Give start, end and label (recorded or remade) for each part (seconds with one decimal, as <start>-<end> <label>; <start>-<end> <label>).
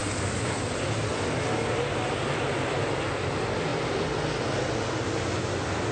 0.0-5.9 recorded